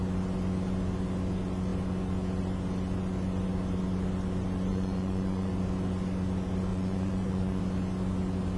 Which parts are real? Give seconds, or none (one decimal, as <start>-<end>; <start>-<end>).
0.0-4.7; 5.5-6.7; 7.6-8.6